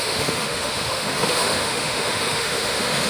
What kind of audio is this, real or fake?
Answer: fake